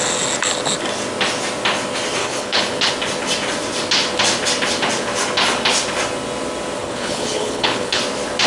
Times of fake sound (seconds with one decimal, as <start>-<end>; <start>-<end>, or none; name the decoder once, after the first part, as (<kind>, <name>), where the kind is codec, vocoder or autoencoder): 2.2-2.9 (codec, HILCodec); 6.8-8.0